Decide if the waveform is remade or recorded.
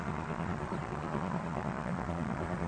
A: remade